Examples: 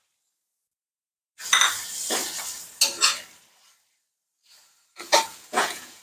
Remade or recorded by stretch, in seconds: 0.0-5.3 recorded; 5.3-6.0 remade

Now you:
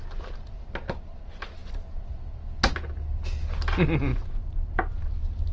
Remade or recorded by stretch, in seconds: 0.0-5.5 recorded

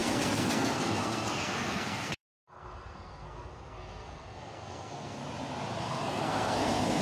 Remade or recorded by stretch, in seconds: 0.0-5.2 remade; 5.2-5.8 recorded; 5.8-7.0 remade

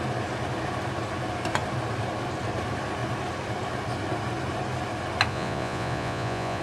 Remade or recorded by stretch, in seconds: 0.0-5.3 recorded; 5.3-6.6 remade

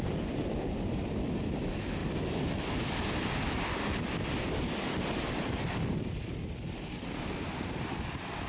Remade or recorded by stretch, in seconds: 0.0-8.5 recorded

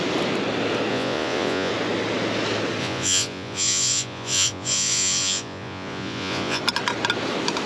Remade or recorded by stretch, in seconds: 0.0-0.9 recorded; 0.9-1.7 remade; 1.7-2.8 recorded; 2.8-6.6 remade; 6.6-7.7 recorded

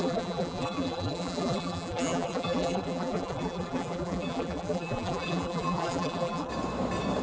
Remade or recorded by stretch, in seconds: 0.0-6.5 remade; 6.5-7.2 recorded

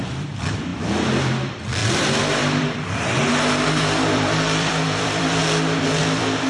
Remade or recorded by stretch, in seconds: 0.0-0.7 remade; 0.7-1.2 recorded; 1.2-5.4 remade; 5.4-6.0 recorded; 6.0-6.5 remade